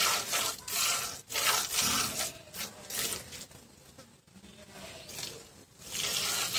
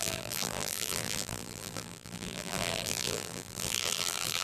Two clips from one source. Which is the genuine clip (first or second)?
first